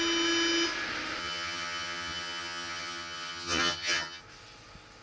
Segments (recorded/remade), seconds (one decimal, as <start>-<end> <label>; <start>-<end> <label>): 0.0-1.2 recorded; 1.2-4.2 remade; 4.2-5.0 recorded